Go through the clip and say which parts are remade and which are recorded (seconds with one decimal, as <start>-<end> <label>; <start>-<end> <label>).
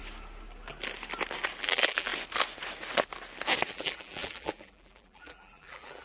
0.0-1.6 recorded; 1.6-2.1 remade; 2.1-3.7 recorded; 3.7-6.0 remade